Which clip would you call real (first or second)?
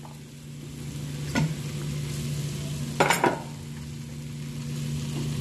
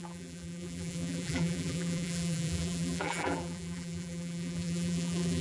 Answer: first